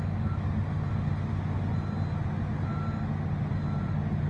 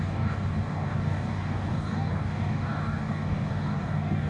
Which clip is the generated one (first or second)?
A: second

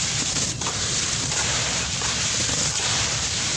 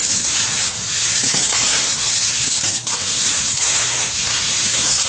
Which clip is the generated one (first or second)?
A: second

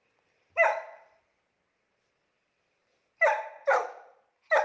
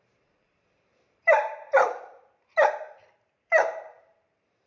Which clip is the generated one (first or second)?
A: second